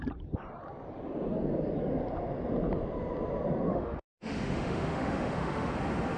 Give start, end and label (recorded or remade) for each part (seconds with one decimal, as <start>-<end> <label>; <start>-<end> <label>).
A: 0.0-3.7 recorded; 3.7-5.7 remade; 5.7-6.2 recorded